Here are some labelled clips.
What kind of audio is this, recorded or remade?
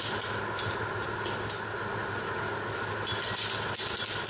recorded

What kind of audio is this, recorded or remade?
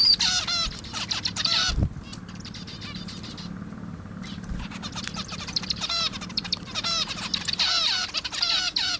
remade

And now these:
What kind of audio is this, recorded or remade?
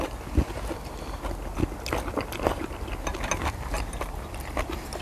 recorded